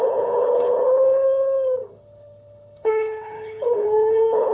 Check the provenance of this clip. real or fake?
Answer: fake